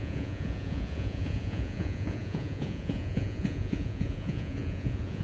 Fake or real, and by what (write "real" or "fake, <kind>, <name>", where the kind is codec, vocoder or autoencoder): fake, vocoder, Vocos